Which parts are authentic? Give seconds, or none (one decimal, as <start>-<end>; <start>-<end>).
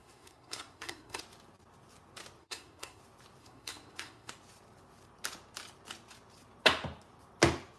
1.2-2.4; 3.0-3.4; 4.3-7.8